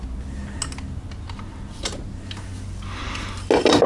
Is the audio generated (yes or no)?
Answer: no